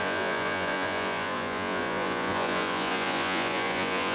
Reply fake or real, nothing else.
fake